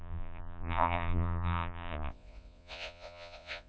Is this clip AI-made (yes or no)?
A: yes